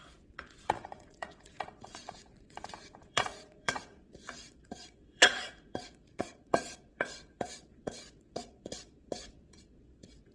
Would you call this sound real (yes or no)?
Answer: no